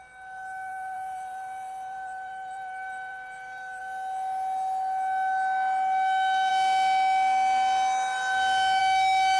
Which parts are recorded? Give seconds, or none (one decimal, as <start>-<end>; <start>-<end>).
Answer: 0.0-0.7; 3.8-9.4